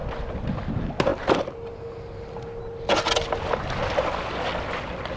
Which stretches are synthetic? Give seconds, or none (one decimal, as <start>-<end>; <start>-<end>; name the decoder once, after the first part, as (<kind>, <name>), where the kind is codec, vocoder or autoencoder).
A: 0.0-0.7 (vocoder, BigVGAN v2)